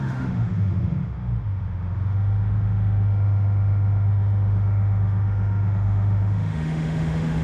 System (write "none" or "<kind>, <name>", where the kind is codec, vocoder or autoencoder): autoencoder, DAC-VAE